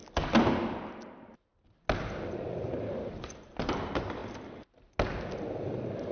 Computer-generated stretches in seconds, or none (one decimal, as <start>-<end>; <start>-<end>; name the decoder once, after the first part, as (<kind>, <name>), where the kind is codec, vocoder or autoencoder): 1.0-1.5 (vocoder, BigVGAN v2); 2.7-4.2